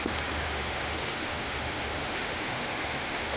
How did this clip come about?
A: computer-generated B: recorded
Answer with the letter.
A